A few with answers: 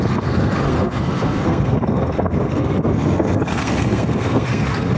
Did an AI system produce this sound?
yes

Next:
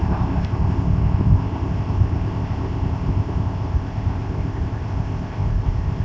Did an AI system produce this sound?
yes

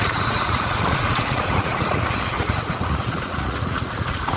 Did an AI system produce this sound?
yes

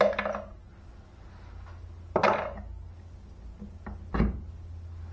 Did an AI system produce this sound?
no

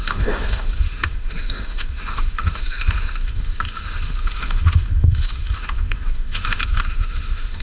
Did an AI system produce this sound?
yes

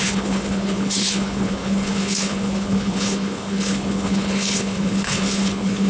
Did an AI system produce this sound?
yes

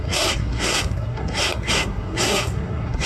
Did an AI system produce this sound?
yes